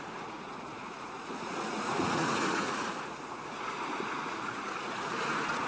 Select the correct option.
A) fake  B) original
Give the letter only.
A